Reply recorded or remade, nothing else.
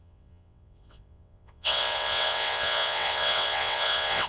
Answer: remade